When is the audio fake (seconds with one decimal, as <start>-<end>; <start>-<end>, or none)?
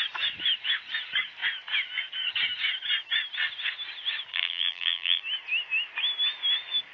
4.3-5.2